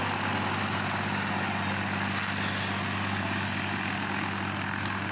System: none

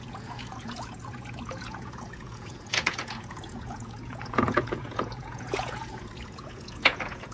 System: vocoder, Vocos